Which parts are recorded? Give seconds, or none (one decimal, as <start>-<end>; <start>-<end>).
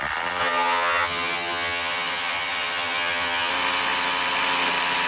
0.0-0.4; 3.5-5.1